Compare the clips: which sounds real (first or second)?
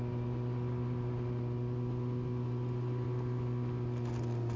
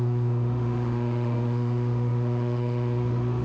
first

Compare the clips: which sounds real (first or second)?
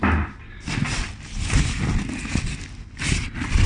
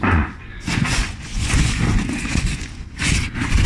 first